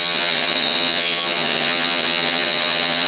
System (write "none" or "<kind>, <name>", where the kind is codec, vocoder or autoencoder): vocoder, HiFi-GAN